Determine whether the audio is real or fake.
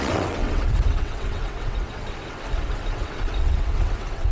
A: fake